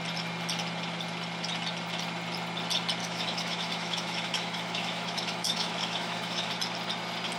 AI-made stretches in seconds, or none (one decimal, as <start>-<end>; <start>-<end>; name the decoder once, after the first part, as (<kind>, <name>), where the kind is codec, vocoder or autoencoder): 3.0-6.5 (autoencoder, DAC-VAE)